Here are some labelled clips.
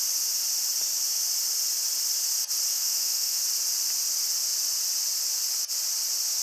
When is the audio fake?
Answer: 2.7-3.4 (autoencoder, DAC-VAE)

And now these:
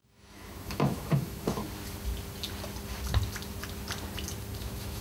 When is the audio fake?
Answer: 0.0-1.6 (autoencoder, DAC-VAE); 4.6-5.0

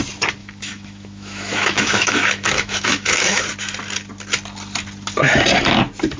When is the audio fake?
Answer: 0.4-3.4 (autoencoder, DAC-VAE)

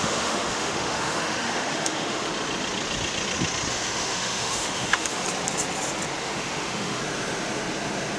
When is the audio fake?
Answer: 0.0-2.3 (autoencoder, DAC-VAE); 3.7-5.2; 6.2-7.0

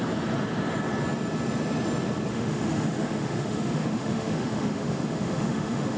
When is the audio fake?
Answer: 2.3-6.0 (autoencoder, DAC-VAE)